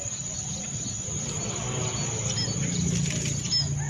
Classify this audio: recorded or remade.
recorded